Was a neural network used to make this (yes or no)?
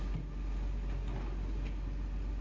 no